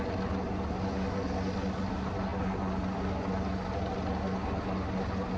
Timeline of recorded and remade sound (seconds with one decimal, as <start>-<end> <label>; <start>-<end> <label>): 0.0-5.4 recorded